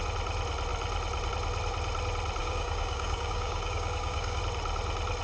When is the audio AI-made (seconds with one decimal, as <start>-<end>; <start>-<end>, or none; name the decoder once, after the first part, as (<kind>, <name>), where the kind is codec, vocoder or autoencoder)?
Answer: 2.4-4.4 (codec, DAC)